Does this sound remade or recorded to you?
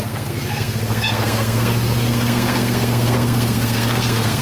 remade